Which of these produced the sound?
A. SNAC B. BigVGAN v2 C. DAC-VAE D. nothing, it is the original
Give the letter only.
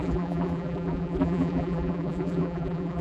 B